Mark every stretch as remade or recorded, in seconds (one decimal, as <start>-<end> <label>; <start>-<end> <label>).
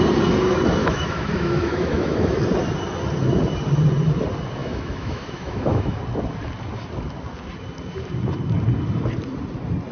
0.0-0.8 recorded; 0.8-2.4 remade; 2.4-4.6 recorded; 4.6-6.0 remade; 6.0-9.9 recorded